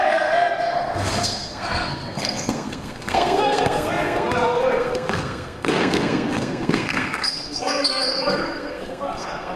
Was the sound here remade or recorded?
remade